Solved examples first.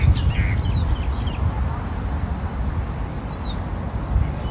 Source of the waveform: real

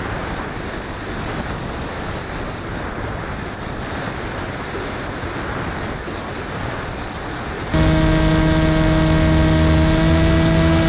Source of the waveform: real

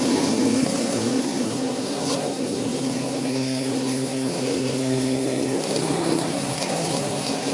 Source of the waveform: fake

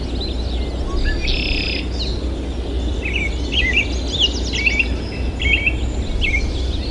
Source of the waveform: real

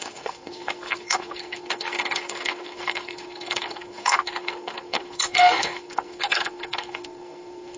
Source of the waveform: fake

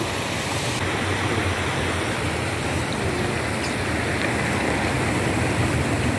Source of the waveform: real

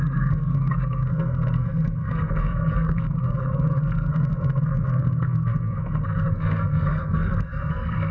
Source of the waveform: fake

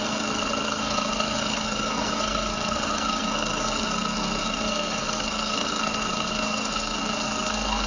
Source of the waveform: fake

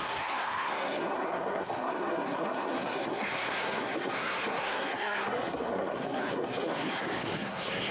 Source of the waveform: fake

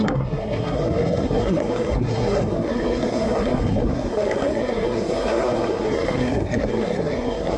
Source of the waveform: fake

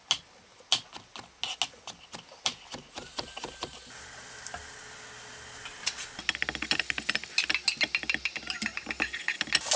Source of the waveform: real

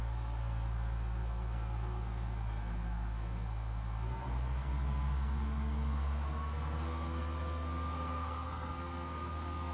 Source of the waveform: fake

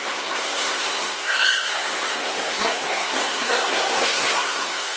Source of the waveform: fake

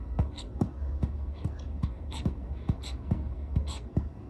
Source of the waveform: fake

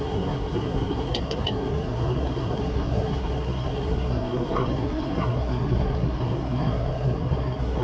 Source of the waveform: fake